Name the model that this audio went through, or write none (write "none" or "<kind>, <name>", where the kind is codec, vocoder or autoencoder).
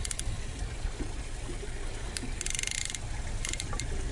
none